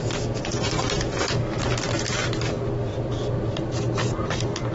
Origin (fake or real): real